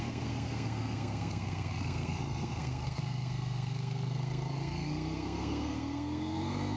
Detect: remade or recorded remade